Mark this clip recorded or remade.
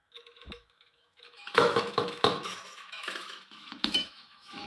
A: remade